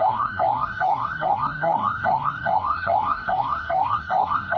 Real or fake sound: fake